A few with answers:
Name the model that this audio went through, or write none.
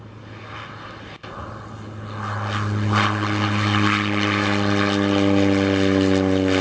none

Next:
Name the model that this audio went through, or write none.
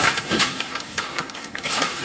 codec, SNAC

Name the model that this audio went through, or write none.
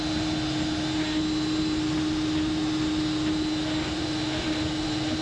none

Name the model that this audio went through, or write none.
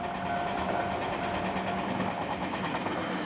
none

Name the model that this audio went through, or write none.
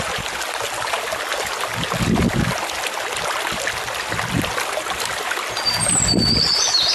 none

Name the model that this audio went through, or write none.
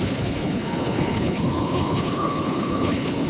codec, HILCodec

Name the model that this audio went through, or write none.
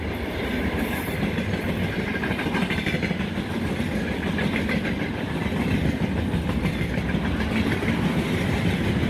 none